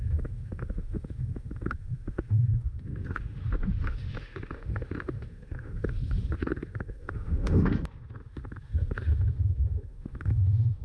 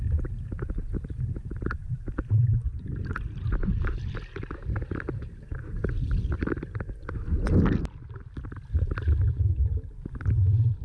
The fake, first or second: first